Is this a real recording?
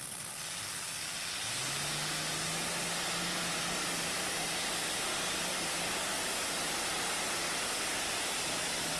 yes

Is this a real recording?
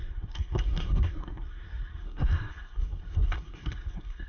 no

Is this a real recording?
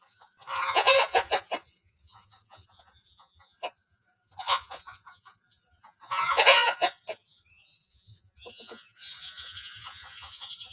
no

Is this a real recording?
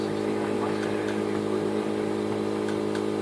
no